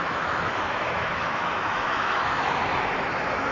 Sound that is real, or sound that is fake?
fake